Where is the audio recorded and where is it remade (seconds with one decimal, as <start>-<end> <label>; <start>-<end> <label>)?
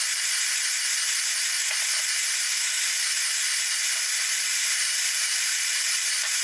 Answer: 0.0-4.5 recorded; 4.5-6.4 remade